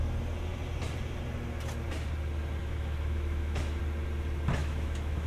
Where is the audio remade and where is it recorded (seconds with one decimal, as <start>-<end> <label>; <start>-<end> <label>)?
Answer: 0.0-2.6 recorded; 2.6-3.8 remade; 3.8-4.6 recorded; 4.6-5.3 remade